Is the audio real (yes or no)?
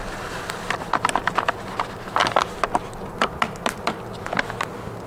yes